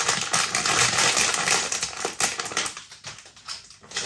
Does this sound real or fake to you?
real